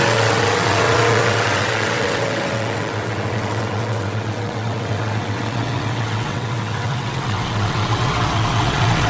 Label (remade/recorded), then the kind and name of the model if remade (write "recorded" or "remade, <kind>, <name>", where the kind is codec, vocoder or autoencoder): remade, vocoder, WaveNeXt